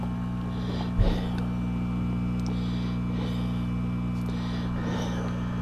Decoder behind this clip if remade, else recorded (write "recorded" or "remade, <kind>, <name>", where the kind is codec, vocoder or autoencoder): recorded